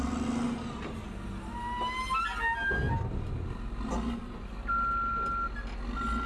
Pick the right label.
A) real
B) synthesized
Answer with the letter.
A